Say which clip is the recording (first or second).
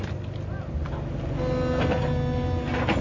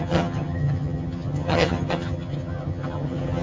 first